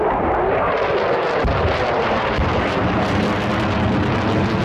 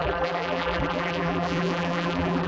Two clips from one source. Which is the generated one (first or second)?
second